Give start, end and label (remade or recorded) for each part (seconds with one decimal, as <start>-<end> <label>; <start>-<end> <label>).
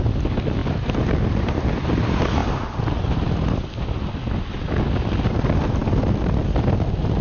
0.0-0.6 remade; 0.6-1.4 recorded; 1.4-7.2 remade